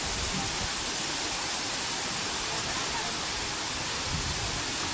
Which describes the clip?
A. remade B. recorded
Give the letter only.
B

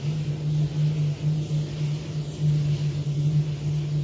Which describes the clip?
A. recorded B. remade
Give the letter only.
A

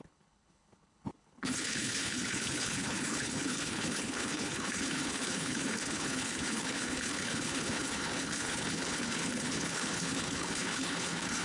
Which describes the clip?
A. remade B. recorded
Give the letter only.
A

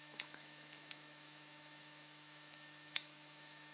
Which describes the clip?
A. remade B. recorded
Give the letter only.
A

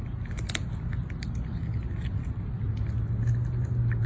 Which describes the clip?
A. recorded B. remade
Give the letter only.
A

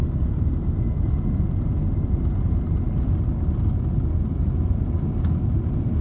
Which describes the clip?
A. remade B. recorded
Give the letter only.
B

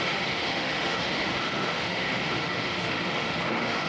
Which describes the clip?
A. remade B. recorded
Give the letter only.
A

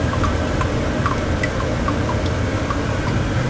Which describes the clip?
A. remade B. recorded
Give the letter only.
B